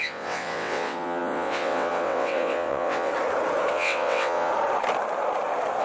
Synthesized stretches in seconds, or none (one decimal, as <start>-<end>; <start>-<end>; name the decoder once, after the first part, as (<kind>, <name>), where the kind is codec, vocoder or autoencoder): 0.0-3.1 (vocoder, WaveNeXt); 3.7-4.5